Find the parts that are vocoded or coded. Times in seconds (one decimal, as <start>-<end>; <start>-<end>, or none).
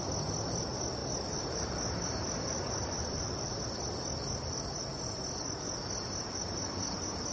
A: 1.0-3.6